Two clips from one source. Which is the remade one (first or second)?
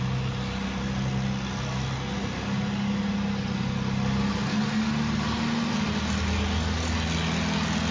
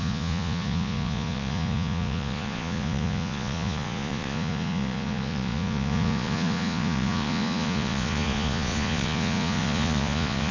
second